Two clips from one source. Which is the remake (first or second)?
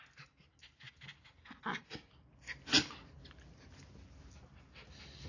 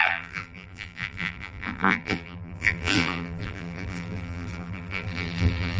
second